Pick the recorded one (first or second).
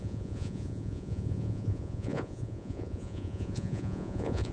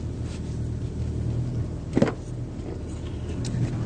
second